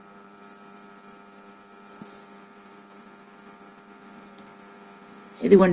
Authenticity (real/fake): fake